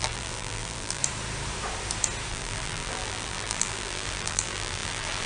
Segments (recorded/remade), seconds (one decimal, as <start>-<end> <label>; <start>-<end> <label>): 0.0-1.0 remade; 1.0-2.3 recorded; 2.3-5.3 remade